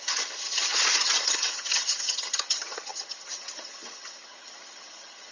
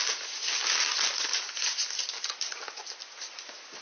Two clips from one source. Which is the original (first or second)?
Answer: second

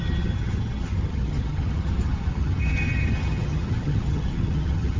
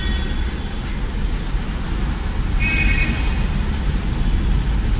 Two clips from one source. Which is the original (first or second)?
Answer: second